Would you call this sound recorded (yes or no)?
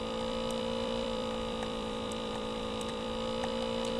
no